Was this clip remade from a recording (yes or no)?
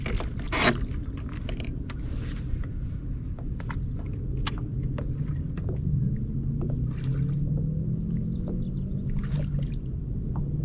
no